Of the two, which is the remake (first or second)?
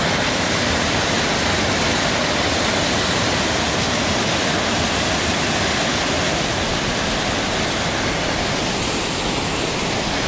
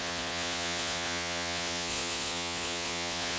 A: second